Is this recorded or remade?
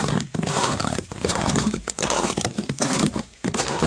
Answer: remade